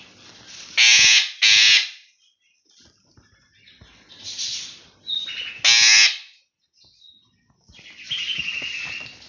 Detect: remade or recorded recorded